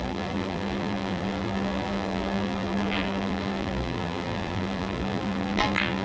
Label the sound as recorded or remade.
remade